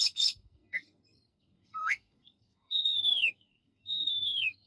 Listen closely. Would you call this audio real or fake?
fake